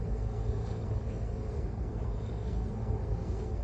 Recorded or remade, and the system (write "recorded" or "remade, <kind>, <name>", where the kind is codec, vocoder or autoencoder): remade, codec, SNAC